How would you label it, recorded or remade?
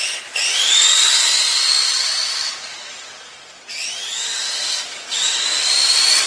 recorded